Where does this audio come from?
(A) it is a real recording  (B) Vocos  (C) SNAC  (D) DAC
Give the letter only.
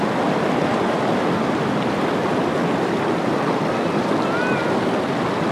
A